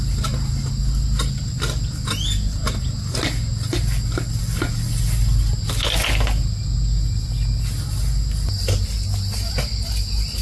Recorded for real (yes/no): yes